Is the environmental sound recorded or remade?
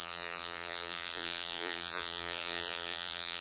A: remade